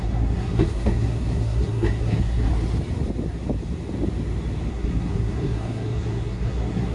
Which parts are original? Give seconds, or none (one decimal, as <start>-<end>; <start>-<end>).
2.5-4.7